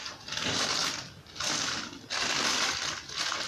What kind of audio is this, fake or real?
real